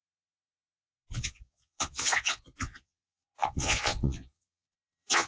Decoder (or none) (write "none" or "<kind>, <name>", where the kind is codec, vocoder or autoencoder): vocoder, Vocos